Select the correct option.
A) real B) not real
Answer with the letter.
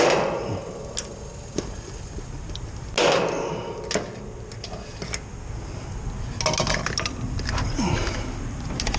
A